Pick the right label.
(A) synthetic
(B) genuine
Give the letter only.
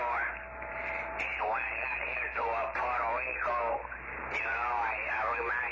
A